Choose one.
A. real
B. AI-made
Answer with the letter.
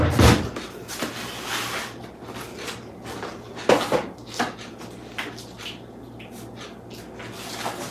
A